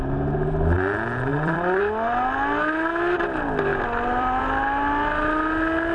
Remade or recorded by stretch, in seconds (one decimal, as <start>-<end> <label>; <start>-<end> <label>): 0.0-1.3 recorded; 1.3-1.8 remade; 1.8-3.7 recorded; 3.7-4.4 remade; 4.4-5.9 recorded